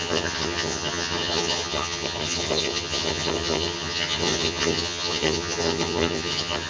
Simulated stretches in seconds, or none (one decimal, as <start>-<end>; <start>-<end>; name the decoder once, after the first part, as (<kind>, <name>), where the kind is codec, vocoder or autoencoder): 0.0-6.7 (vocoder, HiFi-GAN)